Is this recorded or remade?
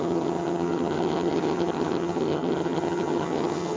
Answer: remade